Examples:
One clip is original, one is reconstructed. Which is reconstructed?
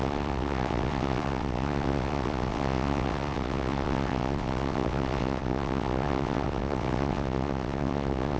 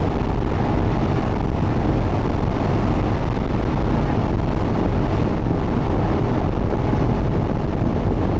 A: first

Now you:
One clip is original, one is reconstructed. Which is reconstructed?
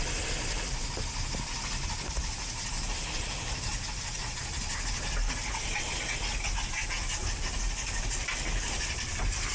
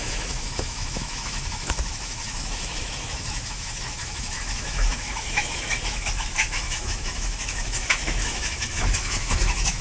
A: second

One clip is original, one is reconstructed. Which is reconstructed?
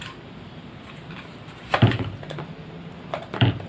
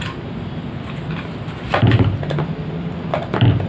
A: first